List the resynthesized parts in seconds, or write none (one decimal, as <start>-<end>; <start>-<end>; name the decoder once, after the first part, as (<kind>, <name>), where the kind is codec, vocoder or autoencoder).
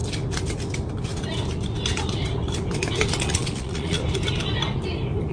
3.2-4.0 (vocoder, Vocos)